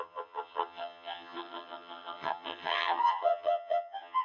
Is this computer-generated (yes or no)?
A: yes